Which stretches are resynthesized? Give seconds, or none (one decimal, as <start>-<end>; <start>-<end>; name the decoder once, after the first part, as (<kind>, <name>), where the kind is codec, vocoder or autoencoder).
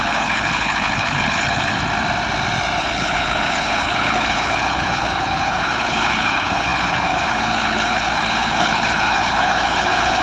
0.0-1.8 (codec, HILCodec); 2.8-10.2